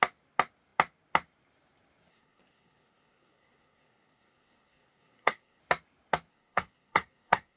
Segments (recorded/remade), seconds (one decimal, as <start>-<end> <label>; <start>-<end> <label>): 0.0-2.1 recorded; 2.1-5.6 remade; 5.6-6.3 recorded; 6.3-7.6 remade